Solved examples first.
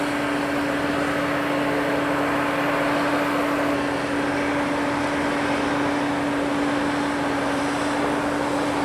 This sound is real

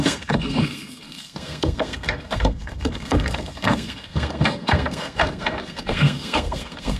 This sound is fake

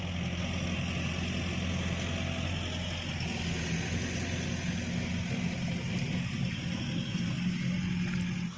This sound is real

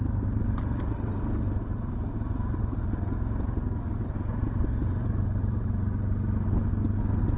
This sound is real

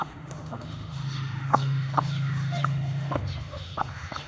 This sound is fake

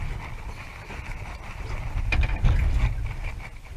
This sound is real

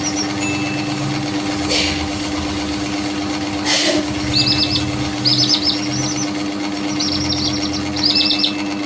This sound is real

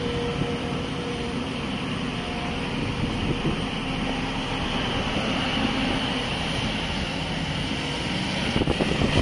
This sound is real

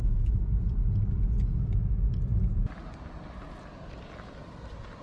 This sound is real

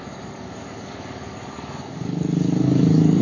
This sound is fake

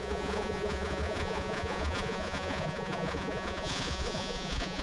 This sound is fake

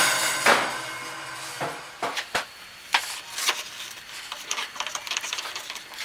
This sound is fake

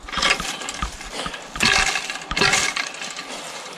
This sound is real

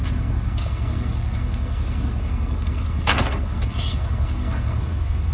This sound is fake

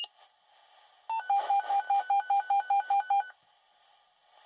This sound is real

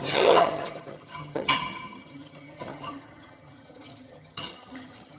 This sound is fake